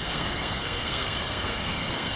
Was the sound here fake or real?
fake